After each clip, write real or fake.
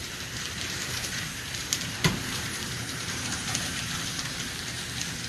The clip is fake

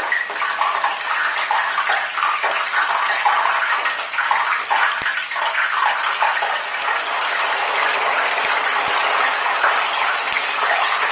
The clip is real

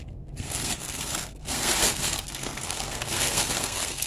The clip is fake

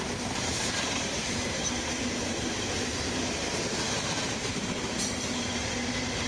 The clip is fake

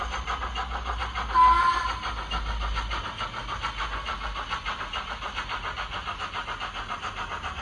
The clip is real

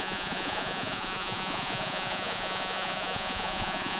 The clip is fake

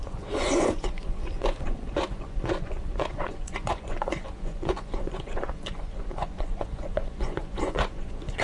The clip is fake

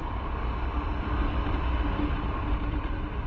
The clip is real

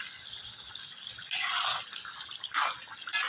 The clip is real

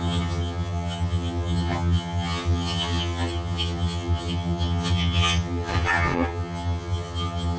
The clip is fake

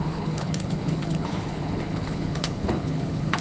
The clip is fake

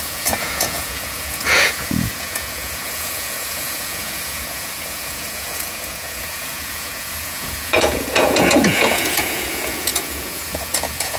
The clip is fake